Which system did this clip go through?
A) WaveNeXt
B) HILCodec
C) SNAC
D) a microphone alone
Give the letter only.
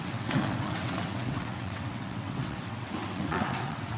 A